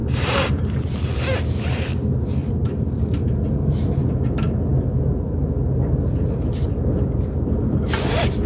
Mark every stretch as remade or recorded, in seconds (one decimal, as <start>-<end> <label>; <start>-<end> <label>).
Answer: 0.0-1.2 remade; 1.2-8.5 recorded